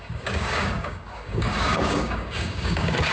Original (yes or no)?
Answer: no